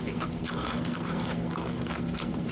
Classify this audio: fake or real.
fake